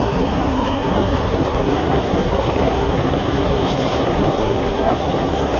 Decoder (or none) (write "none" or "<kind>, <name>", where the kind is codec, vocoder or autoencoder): codec, SNAC